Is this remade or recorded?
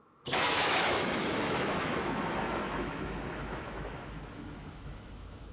remade